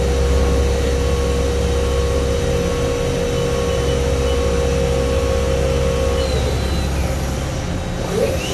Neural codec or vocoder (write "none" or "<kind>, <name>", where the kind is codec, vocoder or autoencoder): none